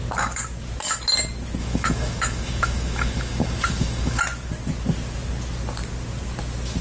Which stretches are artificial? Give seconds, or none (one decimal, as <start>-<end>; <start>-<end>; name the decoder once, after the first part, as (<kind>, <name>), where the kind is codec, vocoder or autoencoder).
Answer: 1.6-4.2 (autoencoder, DAC-VAE)